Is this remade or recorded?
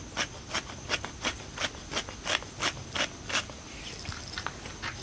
recorded